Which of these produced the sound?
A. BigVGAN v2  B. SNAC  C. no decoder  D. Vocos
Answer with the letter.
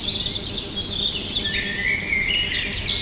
C